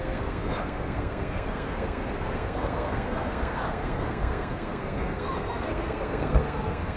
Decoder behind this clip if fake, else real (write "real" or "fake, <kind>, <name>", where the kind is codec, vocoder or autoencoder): fake, codec, SNAC